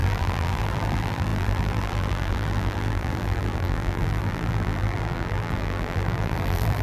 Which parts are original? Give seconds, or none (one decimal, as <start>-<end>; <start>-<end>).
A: none